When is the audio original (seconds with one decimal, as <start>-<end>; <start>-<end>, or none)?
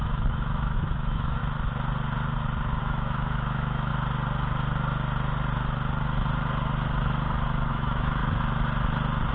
1.4-2.8; 3.9-7.7; 8.2-9.3